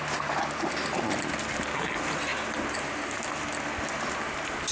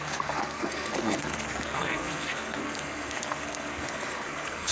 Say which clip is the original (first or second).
first